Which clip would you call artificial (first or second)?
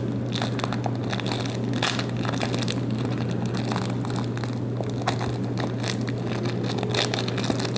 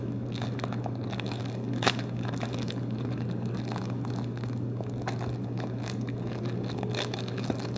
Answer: second